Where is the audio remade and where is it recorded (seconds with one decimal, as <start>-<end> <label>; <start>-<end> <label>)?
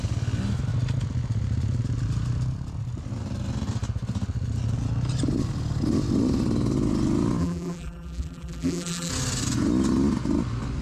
0.0-7.4 recorded; 7.4-9.1 remade; 9.1-10.8 recorded